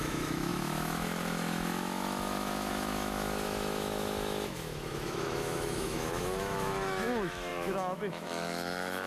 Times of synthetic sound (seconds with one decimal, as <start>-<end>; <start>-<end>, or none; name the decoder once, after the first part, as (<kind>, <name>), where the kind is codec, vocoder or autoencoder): 0.0-9.1 (autoencoder, DAC-VAE)